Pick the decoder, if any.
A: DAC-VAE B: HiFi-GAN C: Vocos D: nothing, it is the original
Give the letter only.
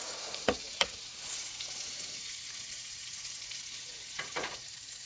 C